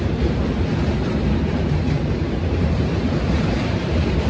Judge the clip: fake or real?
fake